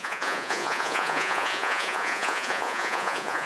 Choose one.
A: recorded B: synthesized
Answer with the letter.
B